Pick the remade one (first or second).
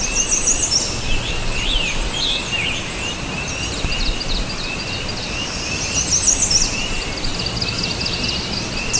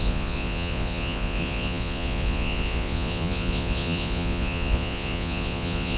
second